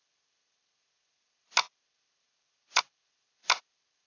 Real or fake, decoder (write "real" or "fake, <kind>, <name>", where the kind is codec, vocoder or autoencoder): real